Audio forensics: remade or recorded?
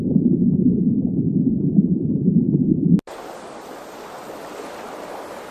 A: recorded